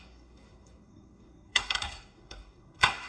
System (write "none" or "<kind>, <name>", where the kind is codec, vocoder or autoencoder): codec, SNAC